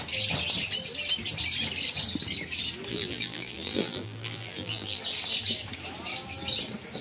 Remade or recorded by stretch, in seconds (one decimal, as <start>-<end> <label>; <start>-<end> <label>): 0.0-2.9 recorded; 2.9-5.0 remade; 5.0-7.0 recorded